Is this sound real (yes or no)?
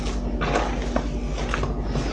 yes